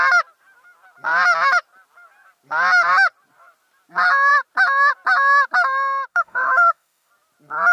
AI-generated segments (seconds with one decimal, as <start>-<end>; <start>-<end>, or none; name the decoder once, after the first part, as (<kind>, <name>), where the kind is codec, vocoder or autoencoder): 6.1-7.1 (autoencoder, DAC-VAE)

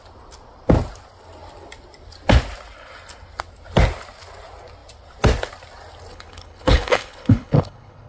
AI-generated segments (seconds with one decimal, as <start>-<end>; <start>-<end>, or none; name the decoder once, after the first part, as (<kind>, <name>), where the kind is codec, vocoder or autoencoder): 6.1-8.1 (codec, HILCodec)

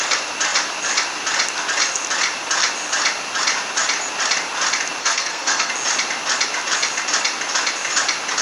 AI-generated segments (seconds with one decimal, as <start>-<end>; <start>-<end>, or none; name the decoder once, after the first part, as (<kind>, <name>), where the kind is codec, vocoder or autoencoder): 5.0-5.7 (codec, SNAC)